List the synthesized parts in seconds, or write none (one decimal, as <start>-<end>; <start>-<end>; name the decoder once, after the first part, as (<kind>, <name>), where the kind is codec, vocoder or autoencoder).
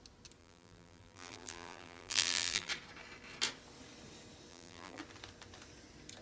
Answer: 0.4-2.7 (vocoder, BigVGAN v2); 4.5-5.0